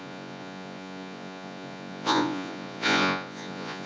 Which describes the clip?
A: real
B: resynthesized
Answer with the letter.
B